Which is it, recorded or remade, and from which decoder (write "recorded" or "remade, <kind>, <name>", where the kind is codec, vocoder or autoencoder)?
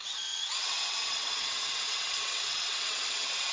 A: remade, vocoder, WaveNeXt